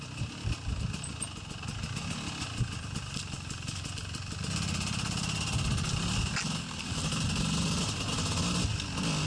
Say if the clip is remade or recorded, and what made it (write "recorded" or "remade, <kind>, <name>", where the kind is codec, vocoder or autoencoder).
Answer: recorded